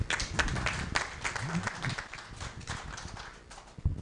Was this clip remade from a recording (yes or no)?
no